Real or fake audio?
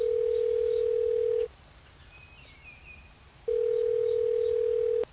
real